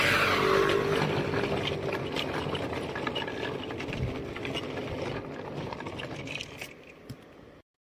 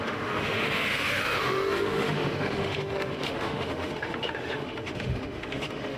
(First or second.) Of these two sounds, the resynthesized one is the second